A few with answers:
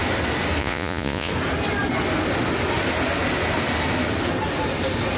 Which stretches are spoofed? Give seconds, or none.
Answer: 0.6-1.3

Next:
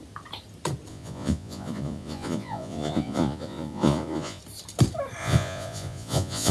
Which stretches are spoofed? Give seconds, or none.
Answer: 0.9-4.4; 5.2-6.5

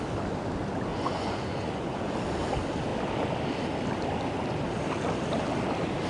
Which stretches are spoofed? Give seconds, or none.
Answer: 0.9-2.1

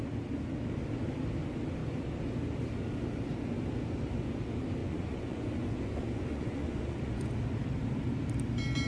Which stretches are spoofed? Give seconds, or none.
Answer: 4.8-7.3

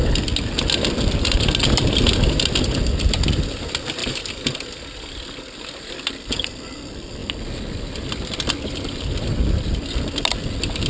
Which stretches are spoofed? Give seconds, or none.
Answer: none

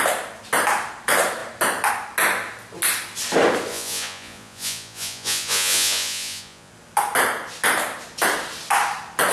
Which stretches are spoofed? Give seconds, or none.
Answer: 3.7-6.7